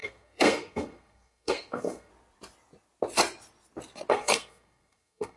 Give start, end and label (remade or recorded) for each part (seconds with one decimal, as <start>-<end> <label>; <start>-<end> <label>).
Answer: 0.0-2.1 remade; 2.1-4.1 recorded; 4.1-5.4 remade